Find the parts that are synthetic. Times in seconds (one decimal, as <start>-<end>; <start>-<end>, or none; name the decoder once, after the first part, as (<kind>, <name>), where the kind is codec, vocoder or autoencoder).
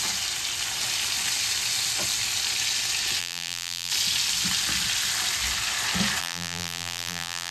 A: 3.2-3.9 (vocoder, BigVGAN v2); 6.2-7.5